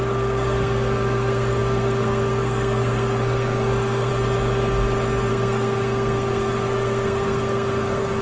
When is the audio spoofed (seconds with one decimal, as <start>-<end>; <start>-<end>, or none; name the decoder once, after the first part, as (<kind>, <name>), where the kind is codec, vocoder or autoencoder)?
0.0-4.1 (codec, SNAC); 5.3-8.2